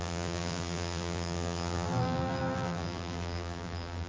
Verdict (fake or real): fake